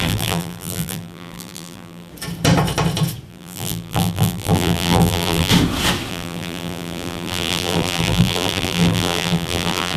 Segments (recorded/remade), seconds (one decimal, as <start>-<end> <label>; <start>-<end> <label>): 0.0-2.1 remade; 2.1-3.3 recorded; 3.3-5.5 remade; 5.5-6.1 recorded; 6.1-10.0 remade